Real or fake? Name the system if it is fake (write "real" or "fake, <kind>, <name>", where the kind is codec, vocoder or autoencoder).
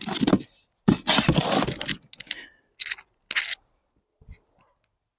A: real